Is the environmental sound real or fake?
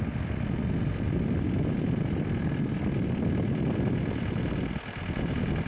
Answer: real